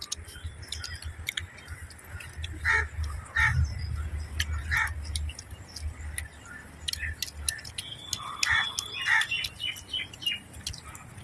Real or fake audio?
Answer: real